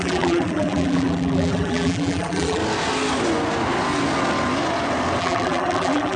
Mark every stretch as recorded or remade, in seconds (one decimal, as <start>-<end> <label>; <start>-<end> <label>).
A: 0.0-2.6 remade; 2.6-5.2 recorded; 5.2-6.2 remade